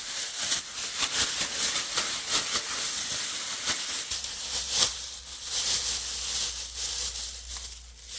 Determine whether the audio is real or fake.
real